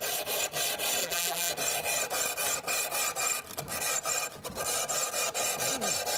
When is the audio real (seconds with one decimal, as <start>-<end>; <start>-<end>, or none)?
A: 0.0-1.0; 1.5-6.2